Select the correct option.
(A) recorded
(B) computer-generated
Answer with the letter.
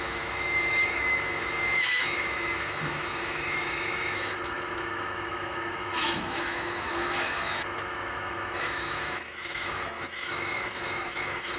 B